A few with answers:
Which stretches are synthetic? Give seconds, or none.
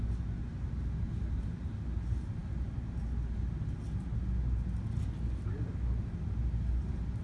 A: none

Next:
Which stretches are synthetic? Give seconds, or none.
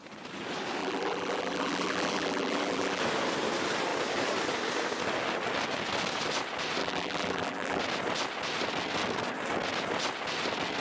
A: 0.8-3.0 (vocoder, BigVGAN v2); 6.8-7.8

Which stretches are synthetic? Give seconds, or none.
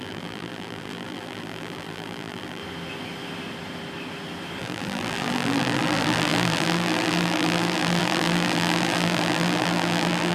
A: 0.0-2.6 (vocoder, BigVGAN v2); 4.6-10.3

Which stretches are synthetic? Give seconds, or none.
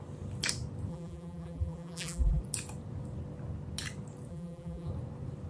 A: 0.9-2.4 (vocoder, BigVGAN v2); 4.3-4.9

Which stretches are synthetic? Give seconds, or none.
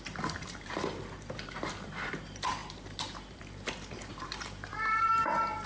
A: 0.0-4.7 (vocoder, BigVGAN v2)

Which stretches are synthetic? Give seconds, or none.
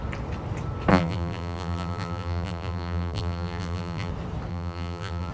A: 0.9-4.1 (vocoder, BigVGAN v2); 4.5-5.3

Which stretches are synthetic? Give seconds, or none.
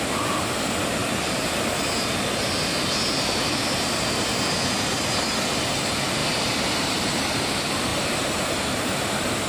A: 1.0-1.5 (vocoder, BigVGAN v2); 6.2-7.2; 7.9-9.5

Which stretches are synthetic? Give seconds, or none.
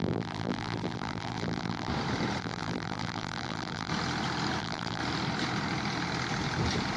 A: 0.0-1.9 (vocoder, BigVGAN v2); 2.4-3.9; 4.6-5.0